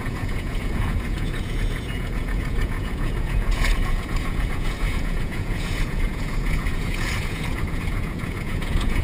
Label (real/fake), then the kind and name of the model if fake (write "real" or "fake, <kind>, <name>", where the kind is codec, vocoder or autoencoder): fake, vocoder, Vocos